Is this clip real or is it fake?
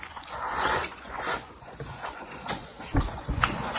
fake